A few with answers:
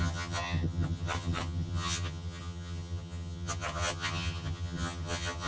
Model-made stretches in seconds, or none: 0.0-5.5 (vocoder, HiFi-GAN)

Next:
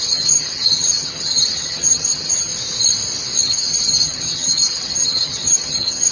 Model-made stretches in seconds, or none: 0.0-2.5 (vocoder, HiFi-GAN); 3.4-6.1